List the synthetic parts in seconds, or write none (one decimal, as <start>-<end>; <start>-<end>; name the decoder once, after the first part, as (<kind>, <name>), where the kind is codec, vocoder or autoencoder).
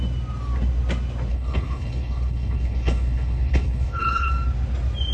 1.3-4.3 (codec, HILCodec)